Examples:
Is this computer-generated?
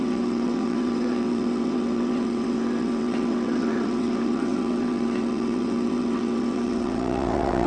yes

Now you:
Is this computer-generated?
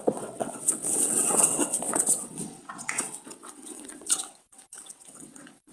yes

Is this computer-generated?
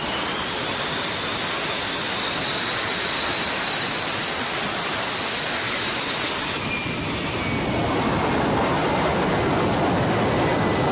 no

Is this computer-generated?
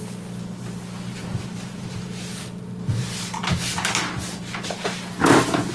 no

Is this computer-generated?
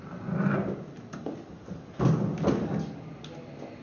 no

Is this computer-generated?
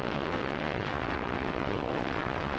yes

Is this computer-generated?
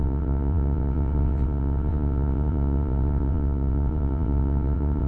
yes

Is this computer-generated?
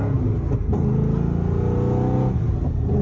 no